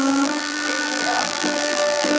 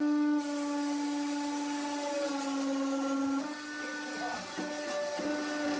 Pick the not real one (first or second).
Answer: first